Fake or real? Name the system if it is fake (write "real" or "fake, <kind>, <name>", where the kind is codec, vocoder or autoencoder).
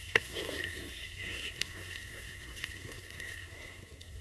fake, codec, SNAC